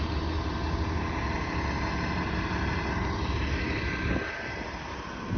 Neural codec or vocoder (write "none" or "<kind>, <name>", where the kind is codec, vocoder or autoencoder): none